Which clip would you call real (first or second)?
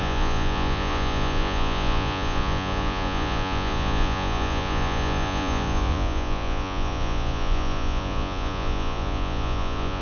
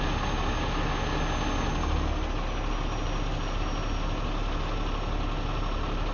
second